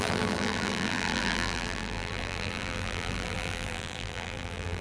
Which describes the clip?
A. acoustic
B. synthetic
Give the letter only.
B